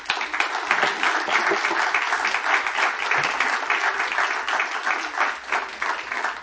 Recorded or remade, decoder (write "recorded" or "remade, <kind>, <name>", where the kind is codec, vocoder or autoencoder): recorded